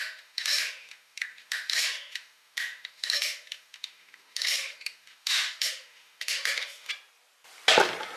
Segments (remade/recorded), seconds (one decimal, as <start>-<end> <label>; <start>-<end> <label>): 0.0-6.9 remade; 6.9-8.2 recorded